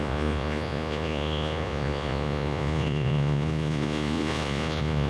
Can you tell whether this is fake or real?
fake